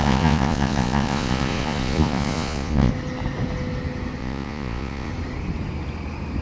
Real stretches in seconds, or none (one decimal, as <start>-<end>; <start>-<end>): 2.9-4.2; 5.1-6.4